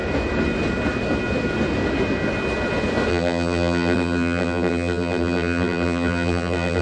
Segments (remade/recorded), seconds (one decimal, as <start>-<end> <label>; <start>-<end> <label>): 0.0-3.1 recorded; 3.1-6.8 remade